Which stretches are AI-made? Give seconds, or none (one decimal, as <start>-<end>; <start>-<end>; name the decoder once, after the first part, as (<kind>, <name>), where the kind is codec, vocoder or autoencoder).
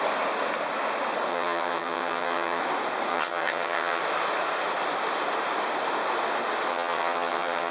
1.3-2.6 (vocoder, HiFi-GAN); 3.1-4.0; 6.7-7.7